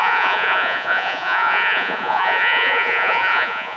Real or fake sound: fake